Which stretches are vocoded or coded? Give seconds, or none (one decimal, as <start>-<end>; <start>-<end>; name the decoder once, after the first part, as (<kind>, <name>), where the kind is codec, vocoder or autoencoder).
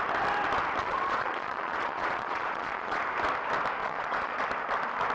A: 0.8-3.0 (vocoder, Vocos); 3.8-4.4